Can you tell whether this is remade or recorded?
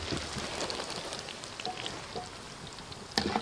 recorded